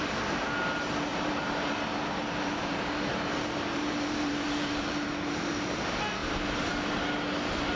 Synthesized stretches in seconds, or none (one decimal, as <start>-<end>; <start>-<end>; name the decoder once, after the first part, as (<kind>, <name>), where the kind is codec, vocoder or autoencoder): 1.1-5.8 (vocoder, BigVGAN v2); 6.2-6.7